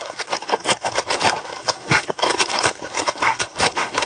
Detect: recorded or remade remade